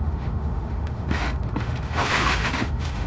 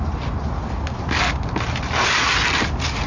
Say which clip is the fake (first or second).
first